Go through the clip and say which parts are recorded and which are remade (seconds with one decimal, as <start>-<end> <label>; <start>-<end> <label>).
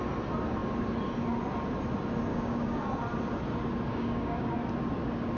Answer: 0.0-2.3 recorded; 2.3-2.8 remade; 2.8-3.9 recorded; 3.9-4.6 remade; 4.6-5.4 recorded